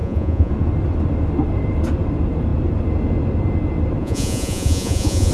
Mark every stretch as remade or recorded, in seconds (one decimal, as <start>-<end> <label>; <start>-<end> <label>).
0.0-0.5 remade; 0.5-4.0 recorded; 4.0-5.3 remade